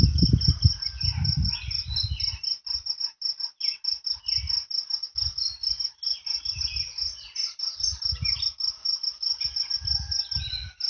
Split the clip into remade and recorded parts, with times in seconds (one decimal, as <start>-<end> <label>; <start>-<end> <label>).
0.0-10.9 recorded